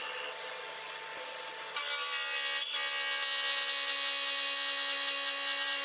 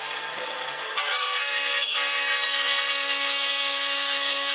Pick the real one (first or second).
first